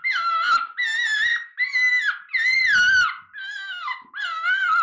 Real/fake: real